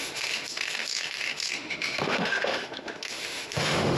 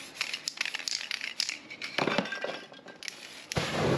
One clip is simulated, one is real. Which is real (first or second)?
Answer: second